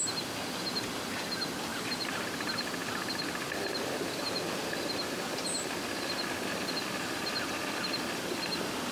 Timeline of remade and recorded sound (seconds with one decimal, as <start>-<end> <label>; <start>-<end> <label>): 0.0-1.7 recorded; 1.7-2.2 remade; 2.2-8.9 recorded